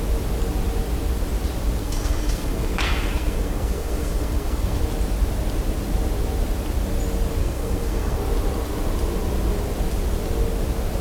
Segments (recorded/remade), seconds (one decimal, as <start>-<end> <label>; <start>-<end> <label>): 0.0-1.8 recorded; 1.8-4.8 remade; 4.8-7.4 recorded; 7.4-8.2 remade; 8.2-11.0 recorded